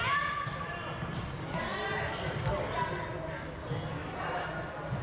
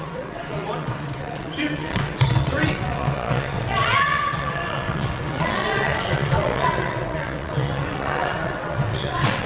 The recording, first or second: first